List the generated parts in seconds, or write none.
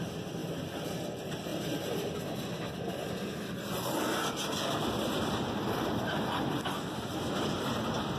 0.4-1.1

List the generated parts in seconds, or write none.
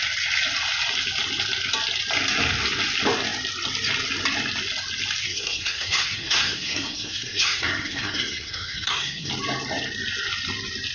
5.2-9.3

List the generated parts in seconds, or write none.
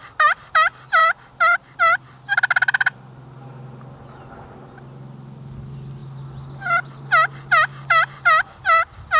none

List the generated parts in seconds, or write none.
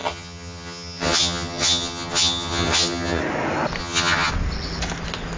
0.0-3.2; 3.8-4.3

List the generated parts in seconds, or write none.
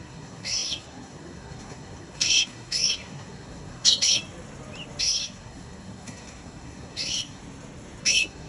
0.0-4.2; 5.0-7.4; 8.0-8.5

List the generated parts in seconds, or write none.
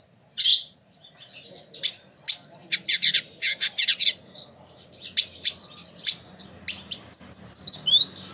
0.5-1.1